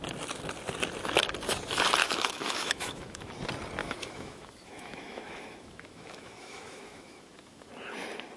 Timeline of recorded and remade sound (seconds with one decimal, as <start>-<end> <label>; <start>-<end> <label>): 0.0-2.0 recorded; 2.0-3.3 remade; 3.3-3.8 recorded; 3.8-7.7 remade; 7.7-8.4 recorded